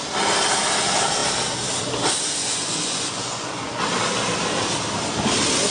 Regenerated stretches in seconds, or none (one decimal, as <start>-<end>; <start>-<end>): 2.4-3.8